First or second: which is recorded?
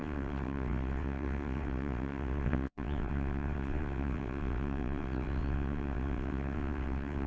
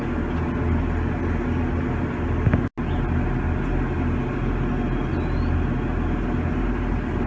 second